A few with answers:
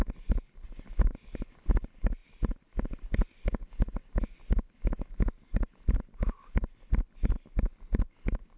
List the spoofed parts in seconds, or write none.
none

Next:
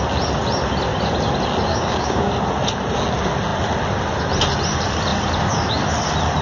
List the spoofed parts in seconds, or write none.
1.7-2.3

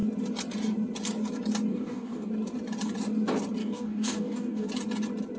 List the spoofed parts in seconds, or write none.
1.7-2.3; 3.6-4.7

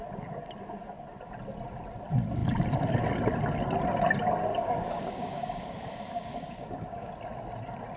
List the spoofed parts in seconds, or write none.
4.5-7.1

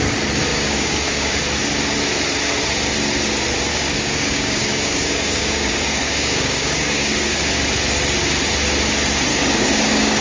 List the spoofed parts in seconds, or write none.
0.5-1.4; 3.7-7.4; 9.3-10.2

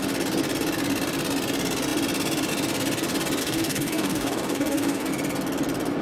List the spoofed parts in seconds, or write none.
3.4-5.1

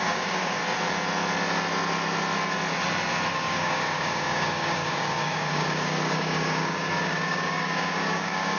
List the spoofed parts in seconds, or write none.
0.0-0.6; 3.3-8.6

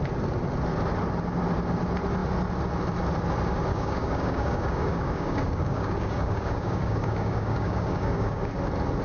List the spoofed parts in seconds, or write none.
3.7-8.5